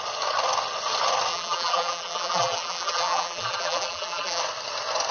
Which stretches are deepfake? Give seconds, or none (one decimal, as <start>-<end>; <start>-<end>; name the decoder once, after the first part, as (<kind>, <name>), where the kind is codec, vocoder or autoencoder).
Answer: 1.3-4.4 (vocoder, BigVGAN v2)